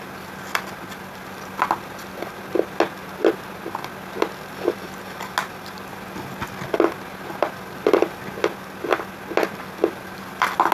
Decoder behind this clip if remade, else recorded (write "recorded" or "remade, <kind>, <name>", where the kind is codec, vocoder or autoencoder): recorded